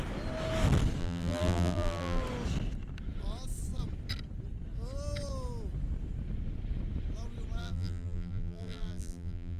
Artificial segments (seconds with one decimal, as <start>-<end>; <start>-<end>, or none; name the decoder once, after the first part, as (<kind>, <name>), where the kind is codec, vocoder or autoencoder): 1.0-2.2 (vocoder, BigVGAN v2); 7.6-9.6